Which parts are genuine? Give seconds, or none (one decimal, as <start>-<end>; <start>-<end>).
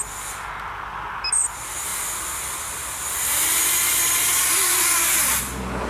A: 0.0-5.9